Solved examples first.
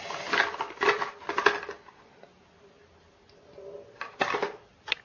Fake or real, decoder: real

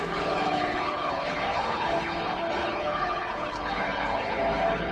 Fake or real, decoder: fake, codec, HILCodec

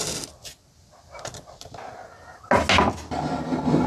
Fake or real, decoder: real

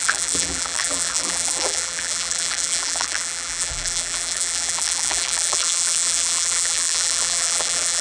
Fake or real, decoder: fake, vocoder, BigVGAN v2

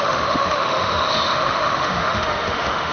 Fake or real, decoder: fake, autoencoder, DAC-VAE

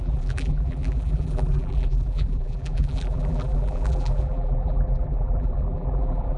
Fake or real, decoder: fake, vocoder, BigVGAN v2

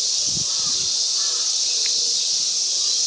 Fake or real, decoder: real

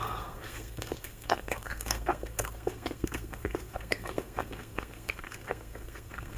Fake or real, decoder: fake, codec, SNAC